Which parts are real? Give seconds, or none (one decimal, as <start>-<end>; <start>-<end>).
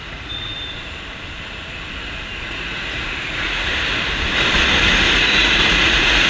0.5-2.4; 3.7-5.2